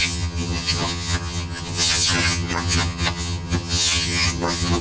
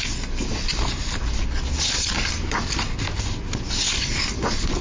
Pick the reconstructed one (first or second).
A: first